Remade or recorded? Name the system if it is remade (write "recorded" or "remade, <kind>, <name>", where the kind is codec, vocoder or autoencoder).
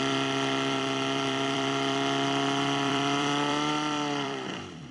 remade, vocoder, BigVGAN v2